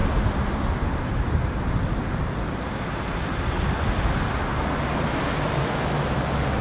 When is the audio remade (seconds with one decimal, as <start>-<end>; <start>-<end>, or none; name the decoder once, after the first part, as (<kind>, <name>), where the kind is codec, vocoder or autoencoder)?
none